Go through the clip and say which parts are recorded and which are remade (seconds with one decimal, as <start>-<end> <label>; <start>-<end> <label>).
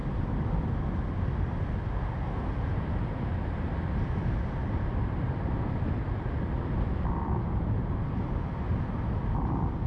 0.0-0.6 remade; 0.6-9.9 recorded